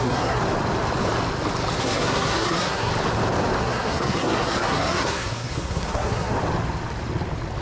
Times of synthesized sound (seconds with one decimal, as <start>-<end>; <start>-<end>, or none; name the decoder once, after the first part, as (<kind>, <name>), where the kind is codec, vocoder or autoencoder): 0.0-0.4 (codec, SNAC); 1.8-2.9; 3.6-6.3